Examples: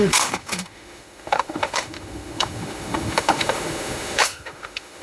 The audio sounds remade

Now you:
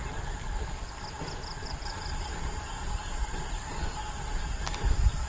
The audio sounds recorded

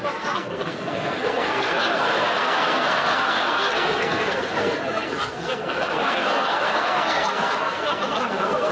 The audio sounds remade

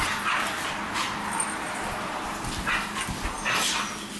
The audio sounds recorded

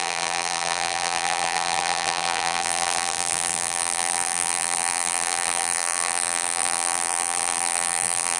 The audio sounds remade